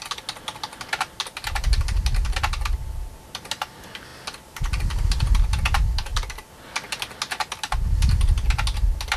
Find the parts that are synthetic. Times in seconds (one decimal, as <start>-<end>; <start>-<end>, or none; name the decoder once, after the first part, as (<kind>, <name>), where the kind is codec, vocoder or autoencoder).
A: none